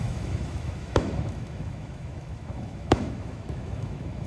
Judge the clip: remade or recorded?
remade